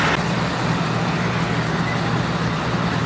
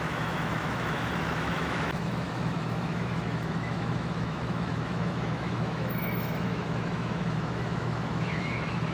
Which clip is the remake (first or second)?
second